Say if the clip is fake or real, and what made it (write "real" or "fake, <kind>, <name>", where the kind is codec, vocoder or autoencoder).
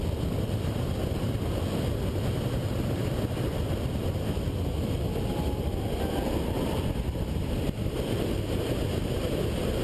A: real